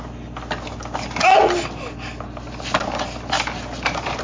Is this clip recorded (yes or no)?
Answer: yes